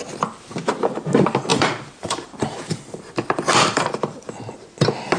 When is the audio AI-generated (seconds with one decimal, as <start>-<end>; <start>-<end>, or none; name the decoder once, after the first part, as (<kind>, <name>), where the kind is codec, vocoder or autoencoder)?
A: 1.5-4.3 (vocoder, BigVGAN v2)